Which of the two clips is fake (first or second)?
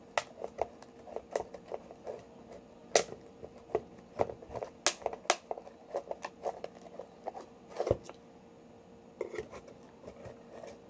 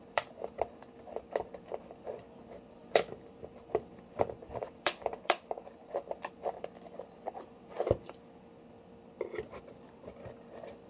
second